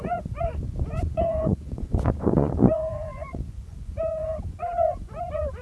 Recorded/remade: remade